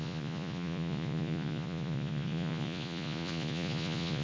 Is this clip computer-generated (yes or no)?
yes